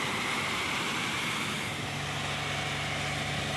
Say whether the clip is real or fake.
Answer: real